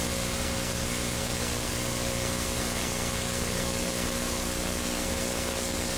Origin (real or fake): fake